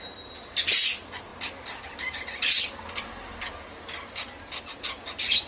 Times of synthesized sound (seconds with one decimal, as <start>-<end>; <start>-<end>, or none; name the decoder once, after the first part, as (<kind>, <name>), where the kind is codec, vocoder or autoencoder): none